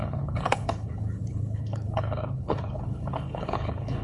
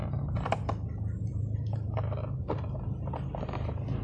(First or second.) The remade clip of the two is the first